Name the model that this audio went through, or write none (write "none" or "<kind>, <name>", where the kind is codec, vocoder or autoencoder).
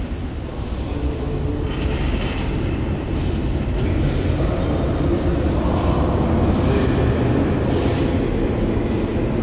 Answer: none